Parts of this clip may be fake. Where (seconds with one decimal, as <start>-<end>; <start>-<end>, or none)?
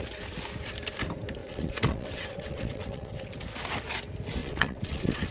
1.4-3.3; 4.4-5.3